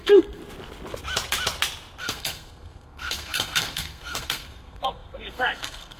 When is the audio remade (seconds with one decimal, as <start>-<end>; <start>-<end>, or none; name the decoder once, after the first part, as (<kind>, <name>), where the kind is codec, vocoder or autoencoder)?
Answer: 0.0-0.4 (codec, SNAC); 2.0-6.0